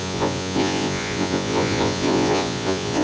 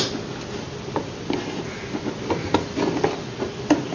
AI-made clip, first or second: first